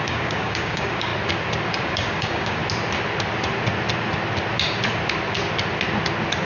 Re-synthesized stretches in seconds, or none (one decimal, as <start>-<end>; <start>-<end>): 0.0-1.1; 1.7-2.6